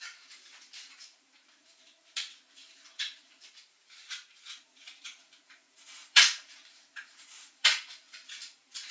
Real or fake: fake